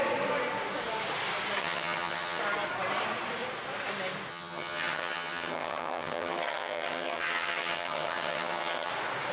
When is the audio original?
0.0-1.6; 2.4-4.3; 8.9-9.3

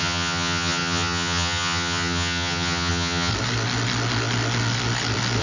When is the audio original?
3.3-5.4

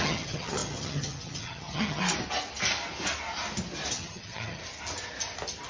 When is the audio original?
2.0-3.9; 4.6-5.7

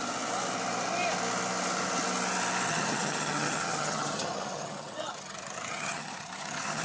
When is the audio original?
0.0-2.7

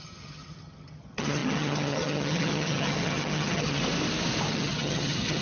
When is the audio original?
3.8-4.5

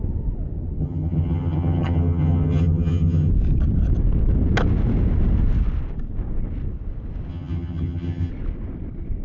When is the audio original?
0.0-0.8; 3.3-7.3; 8.3-9.2

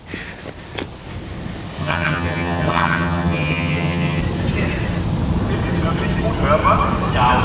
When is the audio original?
0.0-1.8; 4.2-7.4

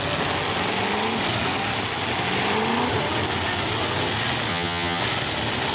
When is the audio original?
0.0-4.5; 5.0-5.7